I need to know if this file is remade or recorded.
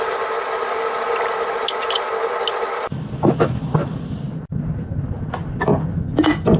recorded